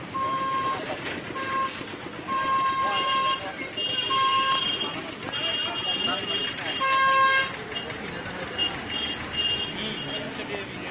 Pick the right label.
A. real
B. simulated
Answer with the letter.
A